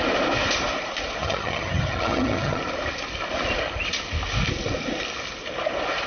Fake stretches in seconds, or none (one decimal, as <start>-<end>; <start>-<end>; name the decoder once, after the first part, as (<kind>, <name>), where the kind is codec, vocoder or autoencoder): 1.2-2.6 (vocoder, HiFi-GAN)